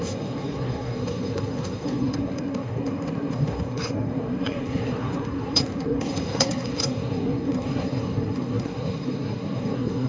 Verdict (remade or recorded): remade